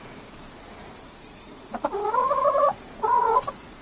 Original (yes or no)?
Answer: no